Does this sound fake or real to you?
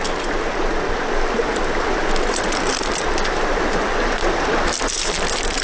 real